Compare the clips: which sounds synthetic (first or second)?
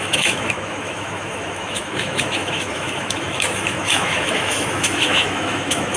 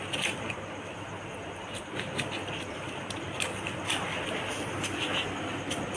first